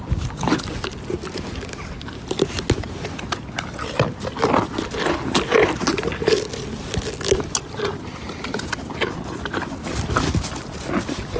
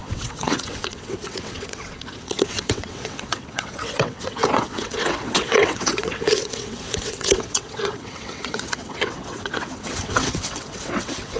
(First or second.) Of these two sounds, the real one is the first